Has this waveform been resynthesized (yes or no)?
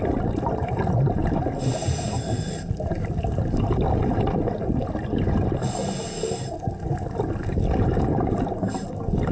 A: no